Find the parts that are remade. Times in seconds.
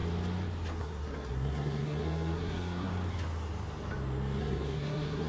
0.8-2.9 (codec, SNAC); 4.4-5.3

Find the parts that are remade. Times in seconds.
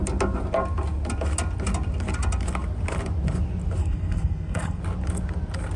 3.8-4.8 (codec, SNAC)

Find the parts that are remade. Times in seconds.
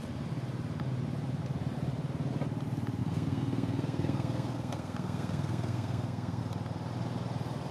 3.0-6.4 (codec, SNAC)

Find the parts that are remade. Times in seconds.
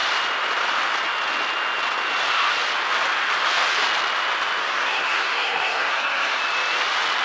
4.6-6.4 (codec, SNAC)